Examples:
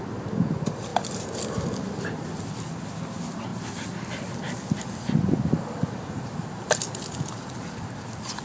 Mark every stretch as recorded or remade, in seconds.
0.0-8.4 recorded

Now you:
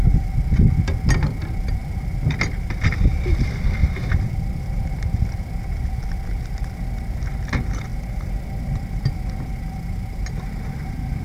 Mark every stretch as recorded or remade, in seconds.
0.0-3.8 recorded; 3.8-6.7 remade; 6.7-7.9 recorded; 7.9-11.2 remade

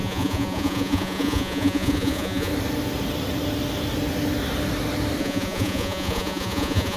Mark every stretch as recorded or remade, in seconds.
0.0-2.5 remade; 2.5-5.2 recorded; 5.2-7.0 remade

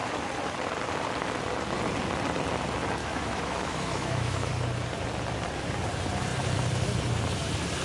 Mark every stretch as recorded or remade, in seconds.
0.0-3.0 recorded; 3.0-4.5 remade; 4.5-7.8 recorded

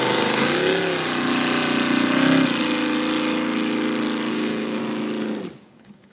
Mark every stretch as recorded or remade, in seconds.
0.0-0.6 remade; 0.6-4.3 recorded; 4.3-4.8 remade; 4.8-5.6 recorded; 5.6-6.1 remade